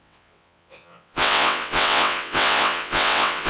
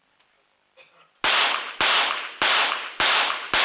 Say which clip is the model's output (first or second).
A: first